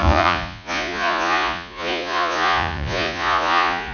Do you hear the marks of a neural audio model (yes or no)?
yes